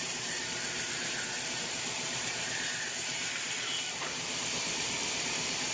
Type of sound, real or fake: fake